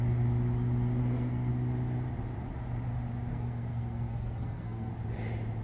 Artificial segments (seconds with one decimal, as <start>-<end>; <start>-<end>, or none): 1.0-1.5; 3.3-4.9